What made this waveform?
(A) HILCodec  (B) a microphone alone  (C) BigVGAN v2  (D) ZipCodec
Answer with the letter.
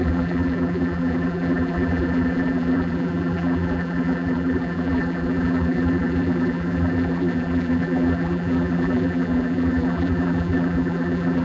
C